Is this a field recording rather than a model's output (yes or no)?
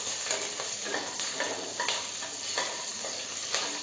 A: yes